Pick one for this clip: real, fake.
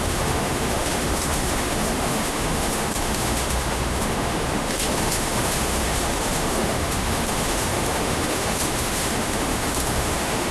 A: fake